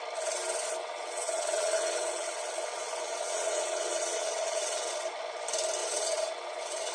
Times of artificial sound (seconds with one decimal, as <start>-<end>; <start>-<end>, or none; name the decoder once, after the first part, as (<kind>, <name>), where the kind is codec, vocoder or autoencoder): 0.8-4.9 (vocoder, WaveNeXt); 5.8-6.9